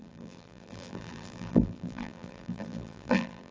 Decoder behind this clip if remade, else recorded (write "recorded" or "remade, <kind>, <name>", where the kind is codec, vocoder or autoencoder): remade, vocoder, BigVGAN v2